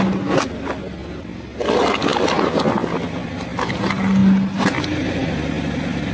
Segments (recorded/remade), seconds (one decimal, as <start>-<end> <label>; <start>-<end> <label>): 0.0-6.1 recorded